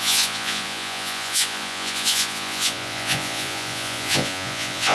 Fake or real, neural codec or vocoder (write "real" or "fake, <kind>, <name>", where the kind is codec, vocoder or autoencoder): fake, vocoder, Vocos